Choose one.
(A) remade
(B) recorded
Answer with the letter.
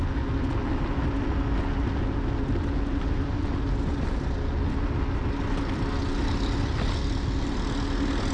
B